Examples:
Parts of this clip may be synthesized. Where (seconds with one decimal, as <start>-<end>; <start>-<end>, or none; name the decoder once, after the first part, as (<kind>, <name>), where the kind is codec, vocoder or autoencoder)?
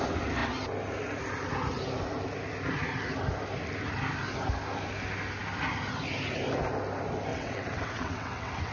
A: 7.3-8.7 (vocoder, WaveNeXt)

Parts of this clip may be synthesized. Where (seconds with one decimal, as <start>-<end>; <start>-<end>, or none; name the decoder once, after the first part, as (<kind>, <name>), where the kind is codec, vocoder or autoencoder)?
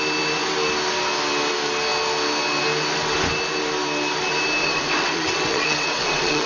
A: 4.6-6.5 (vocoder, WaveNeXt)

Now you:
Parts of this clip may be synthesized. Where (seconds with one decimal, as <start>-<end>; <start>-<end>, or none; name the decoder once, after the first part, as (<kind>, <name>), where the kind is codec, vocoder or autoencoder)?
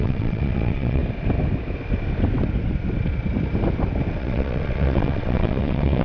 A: 0.0-1.0 (vocoder, WaveNeXt); 4.2-6.0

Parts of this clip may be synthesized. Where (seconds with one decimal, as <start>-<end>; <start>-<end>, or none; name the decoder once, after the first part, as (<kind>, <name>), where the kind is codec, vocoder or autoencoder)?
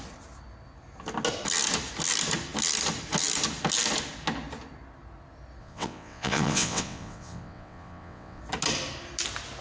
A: 5.6-8.4 (vocoder, WaveNeXt)